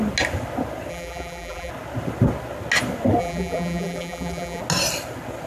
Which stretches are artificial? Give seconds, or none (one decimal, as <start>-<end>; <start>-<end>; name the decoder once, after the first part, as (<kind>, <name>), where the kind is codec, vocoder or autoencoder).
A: 0.9-1.7 (vocoder, BigVGAN v2); 3.2-4.6